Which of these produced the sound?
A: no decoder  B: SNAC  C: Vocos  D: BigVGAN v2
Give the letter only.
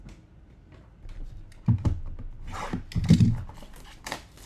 A